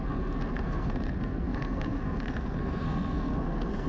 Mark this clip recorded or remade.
remade